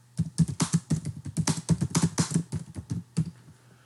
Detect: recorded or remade recorded